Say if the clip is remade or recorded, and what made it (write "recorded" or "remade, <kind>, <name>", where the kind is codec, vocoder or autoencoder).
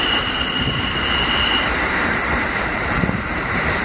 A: remade, vocoder, BigVGAN v2